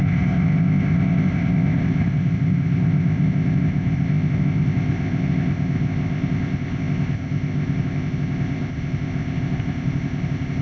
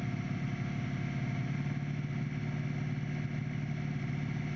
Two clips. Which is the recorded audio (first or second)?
second